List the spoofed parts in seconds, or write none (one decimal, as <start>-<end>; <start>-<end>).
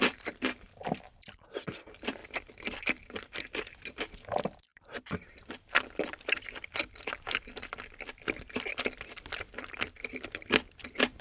0.0-11.2